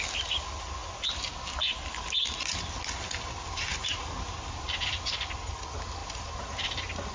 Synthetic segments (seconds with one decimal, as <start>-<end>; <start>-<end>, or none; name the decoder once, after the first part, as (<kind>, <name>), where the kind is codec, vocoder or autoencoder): 0.8-1.3 (vocoder, BigVGAN v2); 3.7-5.5